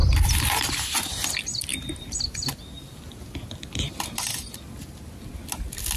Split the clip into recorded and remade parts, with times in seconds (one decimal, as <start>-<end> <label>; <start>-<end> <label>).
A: 0.0-6.0 recorded